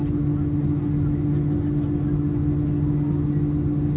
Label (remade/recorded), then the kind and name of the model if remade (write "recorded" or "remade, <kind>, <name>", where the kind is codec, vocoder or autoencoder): recorded